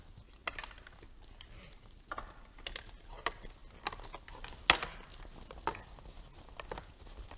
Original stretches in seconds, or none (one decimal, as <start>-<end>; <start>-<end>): 0.0-7.4